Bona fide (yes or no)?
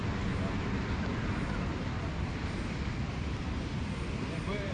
yes